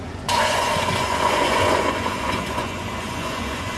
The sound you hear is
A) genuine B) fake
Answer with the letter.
B